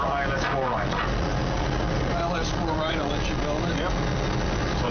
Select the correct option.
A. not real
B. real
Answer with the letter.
B